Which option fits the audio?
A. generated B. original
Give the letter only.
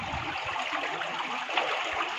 B